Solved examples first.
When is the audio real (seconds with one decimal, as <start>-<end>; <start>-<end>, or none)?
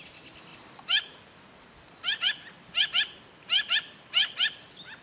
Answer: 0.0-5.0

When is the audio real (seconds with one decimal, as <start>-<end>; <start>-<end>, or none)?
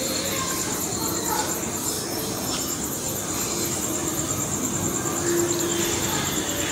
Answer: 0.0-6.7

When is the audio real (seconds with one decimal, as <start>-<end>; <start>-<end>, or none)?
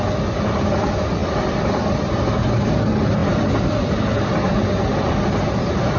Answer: 0.0-6.0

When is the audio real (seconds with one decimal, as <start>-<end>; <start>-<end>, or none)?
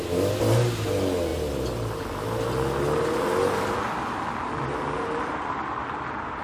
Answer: 0.0-6.4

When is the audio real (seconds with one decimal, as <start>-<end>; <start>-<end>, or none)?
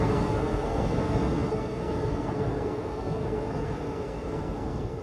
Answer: none